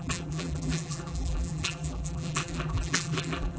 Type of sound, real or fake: fake